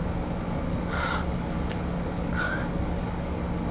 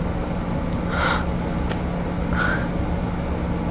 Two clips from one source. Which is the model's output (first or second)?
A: first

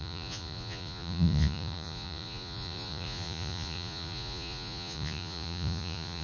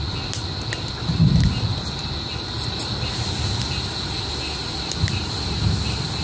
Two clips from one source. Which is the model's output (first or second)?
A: first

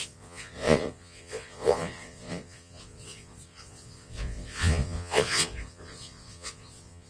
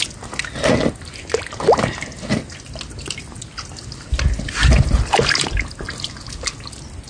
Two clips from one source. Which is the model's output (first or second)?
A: first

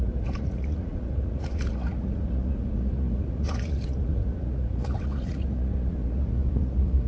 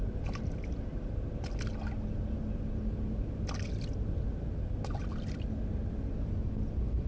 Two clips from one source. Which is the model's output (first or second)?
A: first